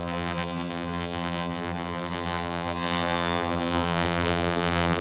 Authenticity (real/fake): fake